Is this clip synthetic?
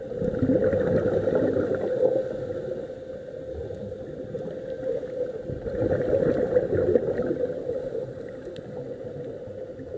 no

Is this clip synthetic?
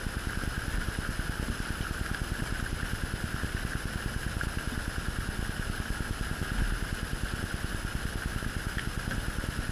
no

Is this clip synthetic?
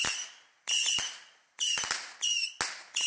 no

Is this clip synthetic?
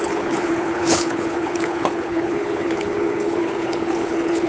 yes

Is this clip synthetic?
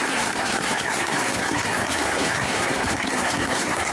yes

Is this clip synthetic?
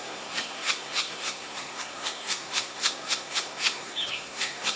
yes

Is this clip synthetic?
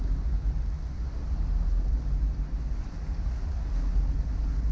no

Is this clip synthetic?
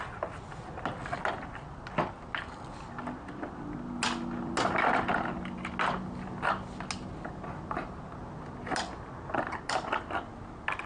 no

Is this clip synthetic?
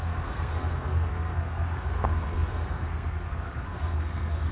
yes